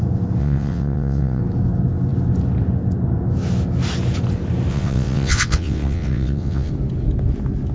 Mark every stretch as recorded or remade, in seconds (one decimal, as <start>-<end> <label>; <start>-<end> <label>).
0.0-0.4 recorded; 0.4-1.4 remade; 1.4-4.7 recorded; 4.7-6.7 remade; 6.7-7.7 recorded